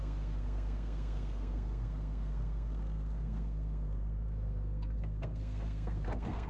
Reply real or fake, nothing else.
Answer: fake